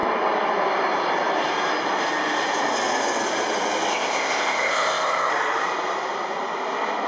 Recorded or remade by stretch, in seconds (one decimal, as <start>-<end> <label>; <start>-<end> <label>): 0.0-3.9 recorded; 3.9-5.3 remade; 5.3-7.1 recorded